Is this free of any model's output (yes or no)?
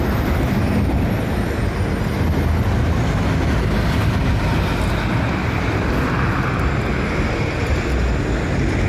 yes